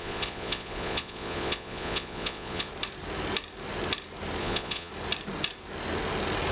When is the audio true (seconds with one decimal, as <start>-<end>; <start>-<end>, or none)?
2.7-4.4; 4.9-6.5